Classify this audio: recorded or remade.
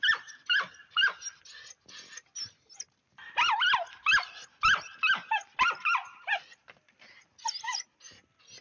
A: recorded